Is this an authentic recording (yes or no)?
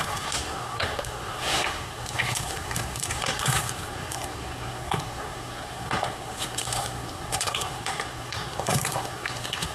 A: no